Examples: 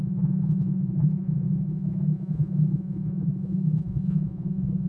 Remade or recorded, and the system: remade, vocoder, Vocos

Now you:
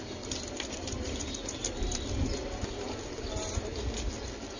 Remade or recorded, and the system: recorded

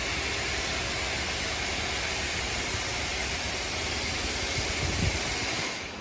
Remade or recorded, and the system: recorded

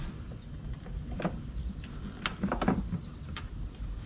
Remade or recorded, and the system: recorded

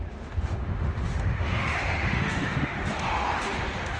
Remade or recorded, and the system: remade, autoencoder, DAC-VAE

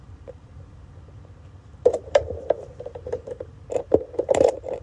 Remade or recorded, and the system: remade, vocoder, BigVGAN v2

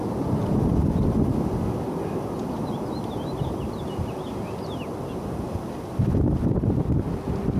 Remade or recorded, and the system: recorded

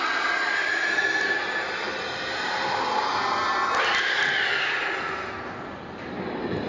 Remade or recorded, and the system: recorded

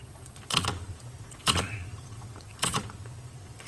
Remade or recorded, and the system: remade, vocoder, Vocos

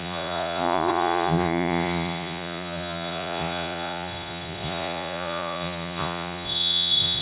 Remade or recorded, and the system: remade, vocoder, Vocos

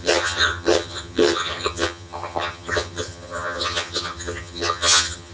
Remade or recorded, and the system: remade, vocoder, HiFi-GAN